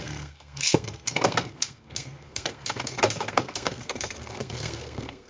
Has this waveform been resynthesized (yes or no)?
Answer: yes